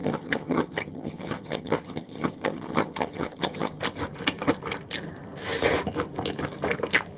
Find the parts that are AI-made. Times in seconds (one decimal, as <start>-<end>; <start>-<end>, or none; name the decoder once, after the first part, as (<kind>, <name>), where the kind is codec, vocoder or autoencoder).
0.0-3.8 (vocoder, HiFi-GAN)

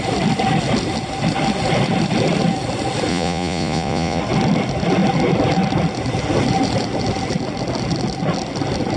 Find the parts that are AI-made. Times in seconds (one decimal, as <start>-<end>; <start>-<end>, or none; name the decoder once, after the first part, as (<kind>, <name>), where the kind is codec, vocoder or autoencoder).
3.1-4.2 (vocoder, Vocos)

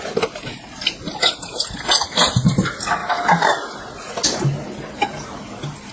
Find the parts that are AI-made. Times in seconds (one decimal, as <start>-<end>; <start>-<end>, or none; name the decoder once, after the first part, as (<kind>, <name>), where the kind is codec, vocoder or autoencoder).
none

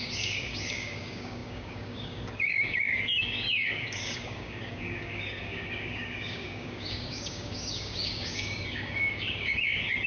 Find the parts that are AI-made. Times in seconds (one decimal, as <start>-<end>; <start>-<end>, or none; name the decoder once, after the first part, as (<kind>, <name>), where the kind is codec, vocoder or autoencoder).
0.0-10.1 (codec, DAC)

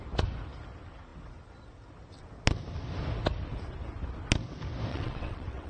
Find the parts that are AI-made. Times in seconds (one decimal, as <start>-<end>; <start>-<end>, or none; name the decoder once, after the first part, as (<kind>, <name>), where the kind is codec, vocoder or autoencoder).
4.9-5.7 (vocoder, WaveNeXt)